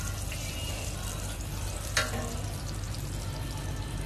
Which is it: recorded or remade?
recorded